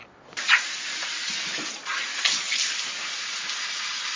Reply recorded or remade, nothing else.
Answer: recorded